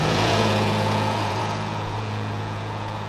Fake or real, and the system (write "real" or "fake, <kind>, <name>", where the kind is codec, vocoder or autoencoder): fake, vocoder, Vocos